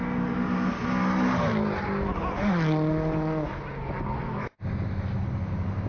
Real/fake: real